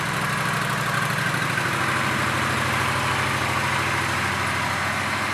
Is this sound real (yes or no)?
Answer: yes